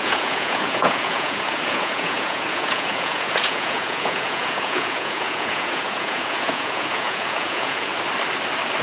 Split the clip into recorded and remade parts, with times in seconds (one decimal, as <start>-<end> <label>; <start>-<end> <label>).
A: 0.0-7.9 remade; 7.9-8.8 recorded